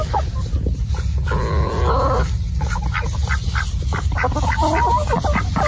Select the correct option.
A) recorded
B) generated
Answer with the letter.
A